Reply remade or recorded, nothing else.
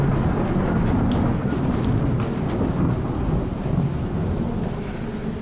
recorded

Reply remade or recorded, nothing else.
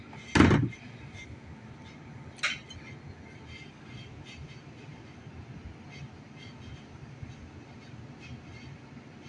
recorded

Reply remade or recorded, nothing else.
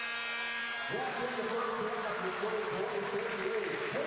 recorded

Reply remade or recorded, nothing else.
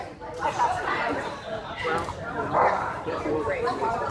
recorded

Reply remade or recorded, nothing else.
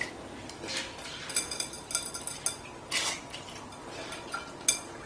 recorded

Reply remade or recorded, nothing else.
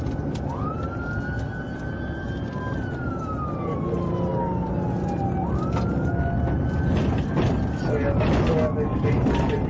recorded